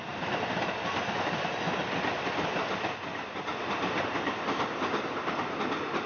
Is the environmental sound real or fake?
real